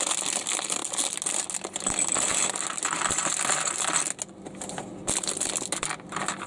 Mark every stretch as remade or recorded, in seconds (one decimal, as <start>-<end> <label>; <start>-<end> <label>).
0.0-6.5 recorded